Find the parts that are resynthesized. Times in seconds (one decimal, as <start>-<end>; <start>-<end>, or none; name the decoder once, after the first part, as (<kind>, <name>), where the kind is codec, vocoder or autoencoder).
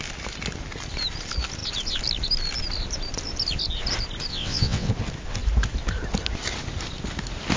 4.3-4.9 (vocoder, WaveNeXt)